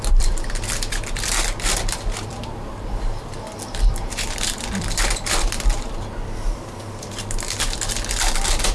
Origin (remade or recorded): remade